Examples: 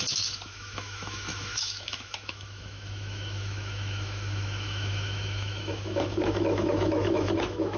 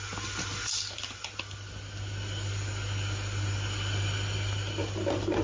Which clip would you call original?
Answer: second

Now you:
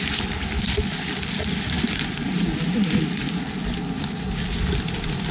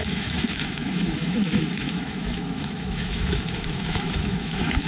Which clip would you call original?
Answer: first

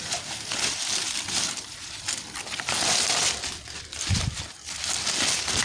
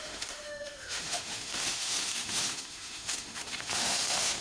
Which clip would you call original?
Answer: first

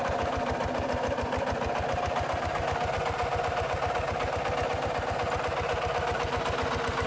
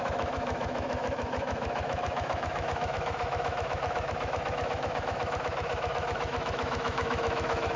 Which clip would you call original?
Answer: first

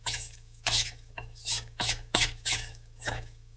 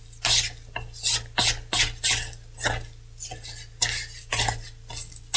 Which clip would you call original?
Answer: second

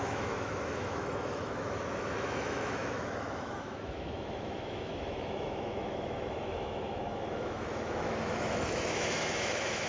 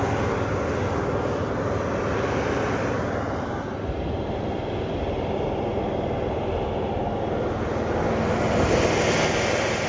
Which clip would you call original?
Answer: second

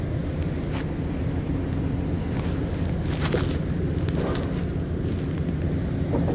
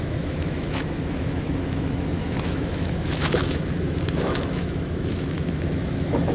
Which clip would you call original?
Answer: first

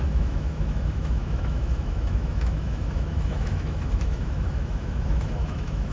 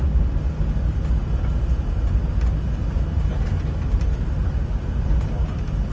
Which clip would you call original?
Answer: second